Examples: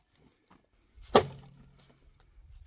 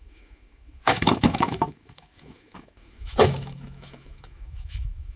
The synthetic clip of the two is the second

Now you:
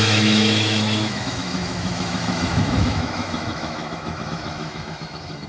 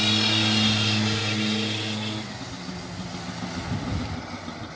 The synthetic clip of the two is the first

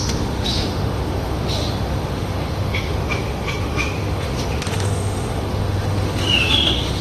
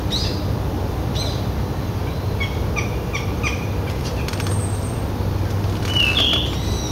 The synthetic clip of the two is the first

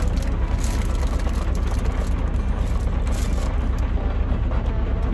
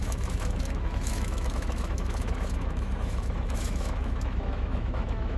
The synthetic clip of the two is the second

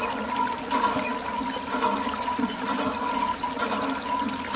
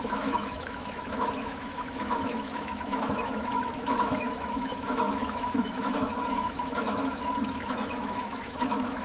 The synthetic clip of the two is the second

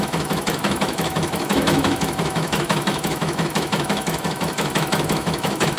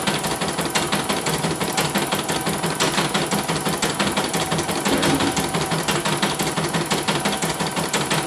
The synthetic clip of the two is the first